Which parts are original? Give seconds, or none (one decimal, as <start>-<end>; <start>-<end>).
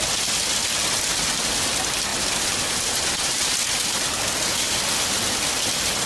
0.0-2.1; 3.3-6.1